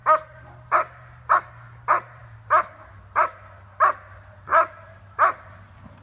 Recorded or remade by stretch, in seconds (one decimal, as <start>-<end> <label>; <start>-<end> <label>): 0.0-6.0 recorded